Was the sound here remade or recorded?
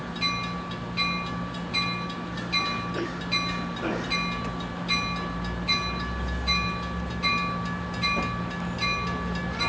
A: recorded